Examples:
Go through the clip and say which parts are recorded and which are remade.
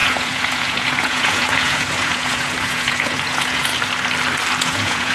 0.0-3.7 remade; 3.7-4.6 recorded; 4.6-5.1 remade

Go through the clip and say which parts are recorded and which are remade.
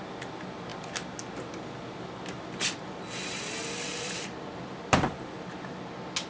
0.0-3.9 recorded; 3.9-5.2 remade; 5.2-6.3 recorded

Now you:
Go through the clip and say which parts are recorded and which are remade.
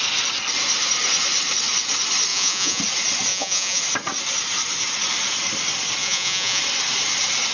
0.0-2.3 recorded; 2.3-2.8 remade; 2.8-3.3 recorded; 3.3-3.8 remade; 3.8-6.0 recorded; 6.0-6.6 remade; 6.6-7.5 recorded